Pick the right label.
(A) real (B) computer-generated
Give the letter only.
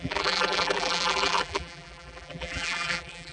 B